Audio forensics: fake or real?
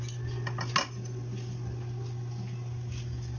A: real